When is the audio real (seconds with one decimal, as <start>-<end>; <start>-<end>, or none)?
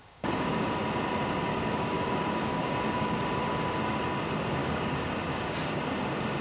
0.5-1.5; 2.1-2.5; 3.1-4.6; 5.8-6.4